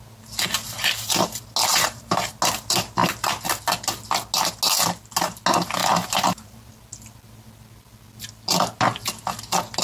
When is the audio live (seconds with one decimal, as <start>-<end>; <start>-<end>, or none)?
0.0-1.7; 2.3-5.8; 6.7-9.8